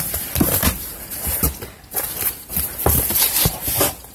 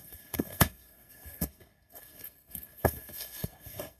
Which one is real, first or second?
first